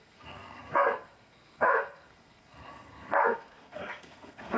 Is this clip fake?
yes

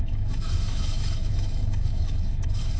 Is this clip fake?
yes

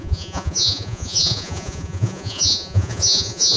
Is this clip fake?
yes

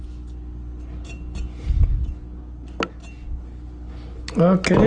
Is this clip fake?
no